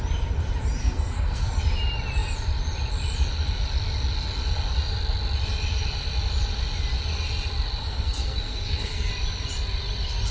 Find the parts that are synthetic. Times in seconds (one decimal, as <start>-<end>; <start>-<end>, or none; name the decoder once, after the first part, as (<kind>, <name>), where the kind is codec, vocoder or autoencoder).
0.8-1.5 (codec, SNAC); 7.8-9.1